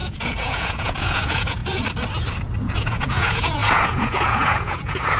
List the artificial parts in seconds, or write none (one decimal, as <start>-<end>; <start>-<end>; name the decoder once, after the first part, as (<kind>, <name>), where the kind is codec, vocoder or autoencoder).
0.0-1.6 (vocoder, Vocos); 2.6-5.2